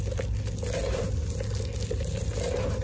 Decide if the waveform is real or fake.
real